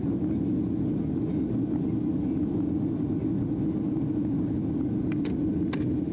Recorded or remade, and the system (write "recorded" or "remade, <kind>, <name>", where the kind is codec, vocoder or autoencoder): recorded